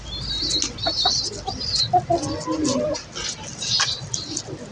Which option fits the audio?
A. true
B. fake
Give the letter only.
A